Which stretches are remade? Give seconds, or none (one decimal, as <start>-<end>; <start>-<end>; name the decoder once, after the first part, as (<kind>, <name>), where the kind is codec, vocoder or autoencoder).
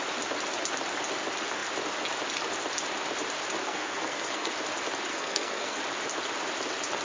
3.6-4.5 (codec, SNAC); 5.1-5.8